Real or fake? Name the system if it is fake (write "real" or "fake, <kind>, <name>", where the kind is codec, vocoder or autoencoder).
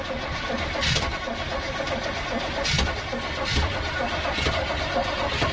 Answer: real